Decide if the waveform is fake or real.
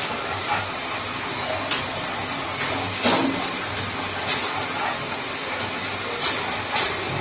real